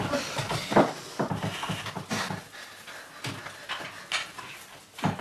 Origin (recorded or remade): recorded